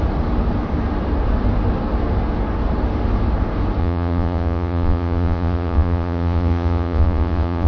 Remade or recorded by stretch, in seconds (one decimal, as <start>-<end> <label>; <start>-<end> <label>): 0.0-3.8 recorded; 3.8-7.7 remade